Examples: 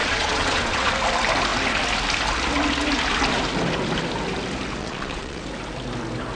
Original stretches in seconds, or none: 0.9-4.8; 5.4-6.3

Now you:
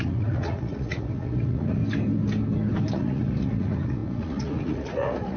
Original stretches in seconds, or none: 1.8-2.9

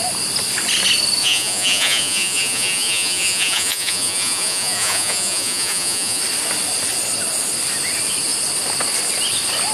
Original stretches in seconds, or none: 0.0-1.2; 6.2-9.7

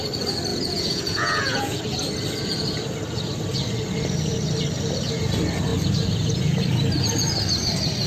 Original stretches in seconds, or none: 0.0-0.5; 1.8-8.1

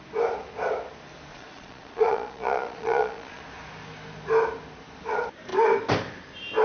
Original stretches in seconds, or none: 0.0-1.3; 3.4-6.6

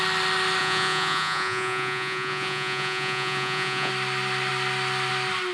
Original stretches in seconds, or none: 0.0-0.6; 3.9-5.5